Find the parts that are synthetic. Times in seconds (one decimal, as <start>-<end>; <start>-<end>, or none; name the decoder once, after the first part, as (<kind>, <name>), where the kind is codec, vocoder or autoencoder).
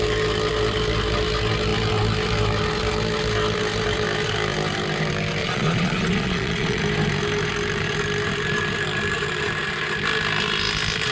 5.4-6.8 (vocoder, Vocos)